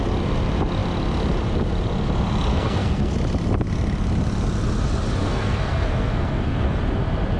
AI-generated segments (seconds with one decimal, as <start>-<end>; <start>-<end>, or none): 2.5-3.1; 5.2-6.8